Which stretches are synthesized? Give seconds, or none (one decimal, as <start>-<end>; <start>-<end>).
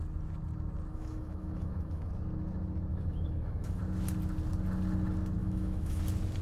0.9-2.1; 2.9-3.8; 5.4-6.0